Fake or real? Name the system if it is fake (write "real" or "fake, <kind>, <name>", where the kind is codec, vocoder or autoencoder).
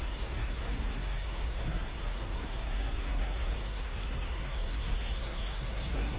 fake, codec, SNAC